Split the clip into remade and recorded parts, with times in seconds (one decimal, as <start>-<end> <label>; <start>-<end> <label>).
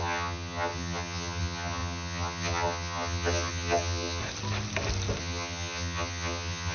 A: 0.0-4.2 remade; 4.2-5.2 recorded; 5.2-6.7 remade